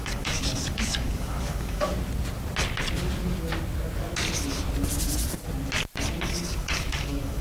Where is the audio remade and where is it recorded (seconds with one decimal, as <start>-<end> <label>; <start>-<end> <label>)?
0.0-1.9 remade; 1.9-6.2 recorded; 6.2-7.4 remade

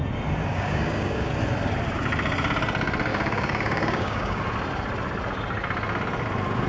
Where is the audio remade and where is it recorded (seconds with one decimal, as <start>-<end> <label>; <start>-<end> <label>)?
0.0-0.5 recorded; 0.5-1.3 remade; 1.3-3.1 recorded; 3.1-4.4 remade; 4.4-6.7 recorded